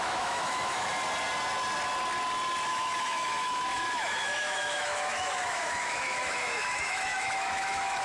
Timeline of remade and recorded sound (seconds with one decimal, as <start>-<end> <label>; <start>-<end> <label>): 0.0-0.9 remade; 0.9-2.7 recorded; 2.7-8.0 remade